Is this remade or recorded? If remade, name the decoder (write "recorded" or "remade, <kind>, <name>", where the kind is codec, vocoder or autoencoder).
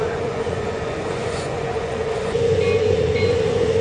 remade, vocoder, Vocos